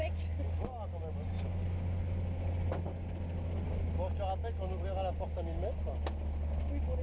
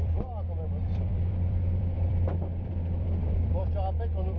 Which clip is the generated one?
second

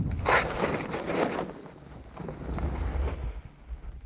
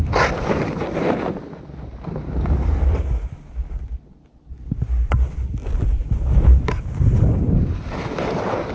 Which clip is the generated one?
second